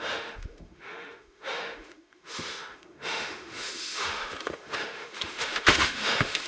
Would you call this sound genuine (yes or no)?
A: no